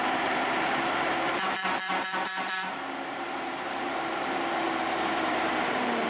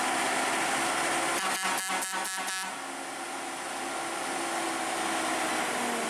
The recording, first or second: second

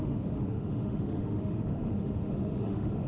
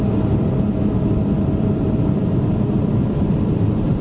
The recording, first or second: second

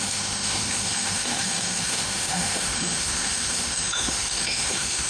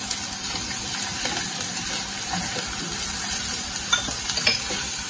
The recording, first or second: second